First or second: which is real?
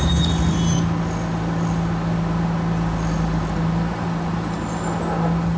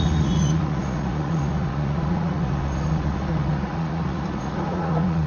first